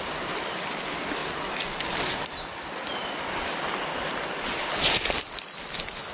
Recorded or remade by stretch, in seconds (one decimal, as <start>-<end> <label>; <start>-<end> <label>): 0.0-6.1 recorded